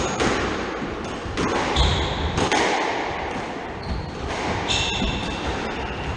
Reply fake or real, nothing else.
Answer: real